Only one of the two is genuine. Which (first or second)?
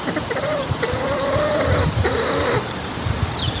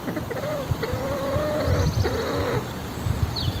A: second